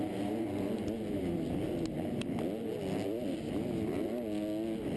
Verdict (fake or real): real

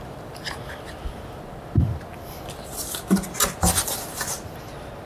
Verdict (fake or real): real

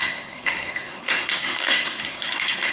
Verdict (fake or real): fake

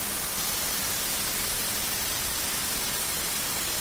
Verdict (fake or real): real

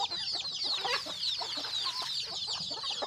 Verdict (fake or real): real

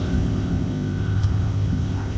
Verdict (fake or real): fake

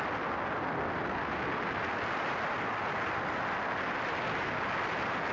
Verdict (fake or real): real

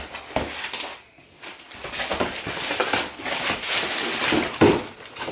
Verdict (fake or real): real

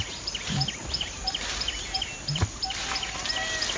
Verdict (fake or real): real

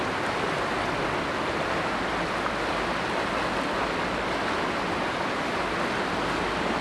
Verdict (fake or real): real